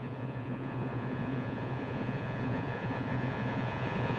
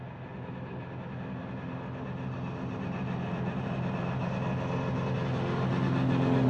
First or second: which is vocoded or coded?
first